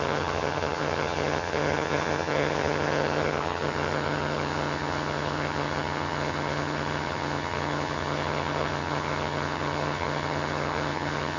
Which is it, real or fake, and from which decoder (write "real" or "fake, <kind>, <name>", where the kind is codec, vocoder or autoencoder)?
fake, vocoder, HiFi-GAN